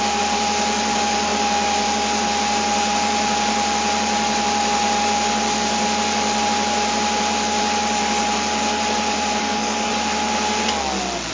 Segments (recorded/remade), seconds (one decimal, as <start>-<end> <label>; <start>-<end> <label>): 0.0-9.4 recorded; 9.4-9.9 remade; 9.9-11.3 recorded